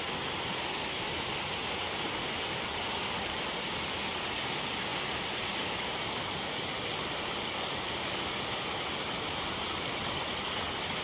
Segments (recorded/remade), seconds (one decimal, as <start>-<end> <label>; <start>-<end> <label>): 0.0-11.0 recorded

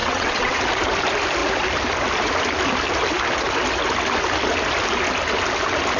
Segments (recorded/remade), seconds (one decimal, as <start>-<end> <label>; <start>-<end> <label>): 0.0-0.6 remade; 0.6-6.0 recorded

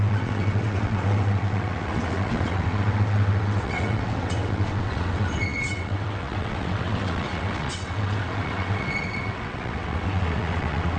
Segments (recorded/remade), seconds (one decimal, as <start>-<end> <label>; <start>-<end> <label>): 0.0-11.0 remade

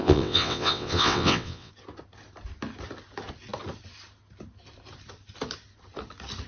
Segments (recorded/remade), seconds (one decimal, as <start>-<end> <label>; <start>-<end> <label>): 0.0-1.7 remade; 1.7-6.5 recorded